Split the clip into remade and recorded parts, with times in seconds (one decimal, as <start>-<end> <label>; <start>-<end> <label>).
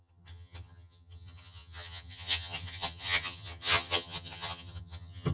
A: 0.0-5.3 remade